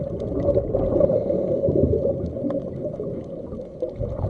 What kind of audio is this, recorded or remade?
recorded